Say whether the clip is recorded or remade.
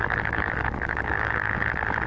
remade